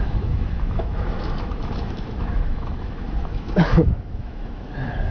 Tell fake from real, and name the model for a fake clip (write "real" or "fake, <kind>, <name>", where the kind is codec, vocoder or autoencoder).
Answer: fake, autoencoder, DAC-VAE